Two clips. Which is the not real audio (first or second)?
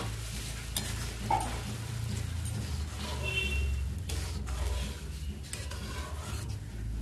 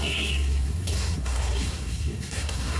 second